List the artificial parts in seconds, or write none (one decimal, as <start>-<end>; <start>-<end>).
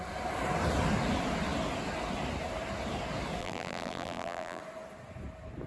3.4-4.6